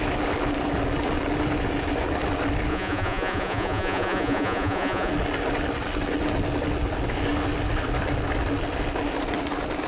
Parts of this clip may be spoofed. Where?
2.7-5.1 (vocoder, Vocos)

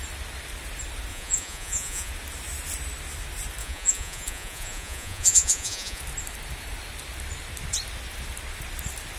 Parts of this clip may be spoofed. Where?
1.1-2.1 (vocoder, Vocos); 3.6-6.0

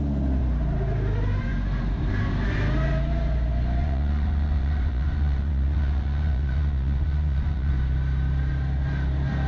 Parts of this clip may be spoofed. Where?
3.8-7.7 (vocoder, Vocos)

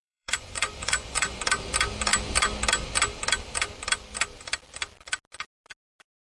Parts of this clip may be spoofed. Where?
0.0-1.4 (vocoder, Vocos)